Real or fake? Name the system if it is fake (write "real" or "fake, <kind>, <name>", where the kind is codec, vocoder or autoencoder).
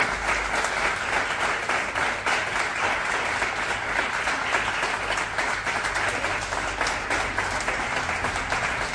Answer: real